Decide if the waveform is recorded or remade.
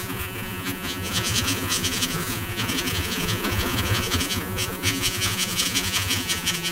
remade